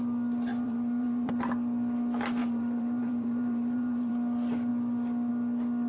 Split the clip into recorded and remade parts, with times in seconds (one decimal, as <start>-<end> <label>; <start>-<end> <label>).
0.0-0.5 recorded; 0.5-1.3 remade; 1.3-2.4 recorded; 2.4-4.1 remade; 4.1-5.9 recorded